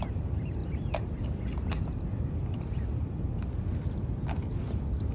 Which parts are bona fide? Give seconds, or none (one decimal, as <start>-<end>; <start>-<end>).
0.0-5.1